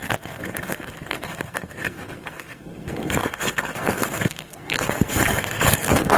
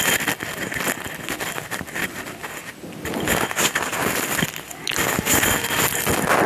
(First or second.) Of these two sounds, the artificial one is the first